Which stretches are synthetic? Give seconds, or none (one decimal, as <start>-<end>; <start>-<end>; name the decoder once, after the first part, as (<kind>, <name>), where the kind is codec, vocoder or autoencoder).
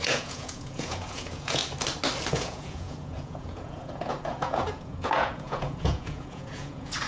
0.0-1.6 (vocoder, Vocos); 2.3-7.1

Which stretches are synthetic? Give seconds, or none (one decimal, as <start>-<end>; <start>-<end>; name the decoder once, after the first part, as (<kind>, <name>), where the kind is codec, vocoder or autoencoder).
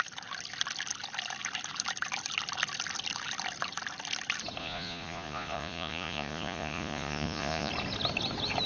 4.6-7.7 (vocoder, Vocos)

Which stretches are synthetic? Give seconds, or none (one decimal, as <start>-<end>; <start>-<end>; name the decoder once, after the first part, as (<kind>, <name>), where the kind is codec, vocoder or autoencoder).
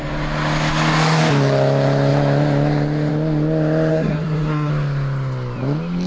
3.9-4.7 (codec, SNAC)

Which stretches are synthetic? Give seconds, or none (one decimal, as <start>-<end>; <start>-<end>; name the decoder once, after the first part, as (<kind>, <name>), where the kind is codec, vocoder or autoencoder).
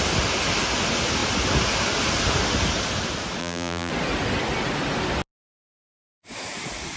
3.4-3.9 (vocoder, BigVGAN v2)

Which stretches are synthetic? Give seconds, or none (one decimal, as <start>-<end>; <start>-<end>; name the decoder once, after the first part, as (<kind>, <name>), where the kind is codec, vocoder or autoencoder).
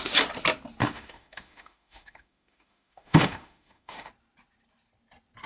0.8-4.1 (autoencoder, DAC-VAE)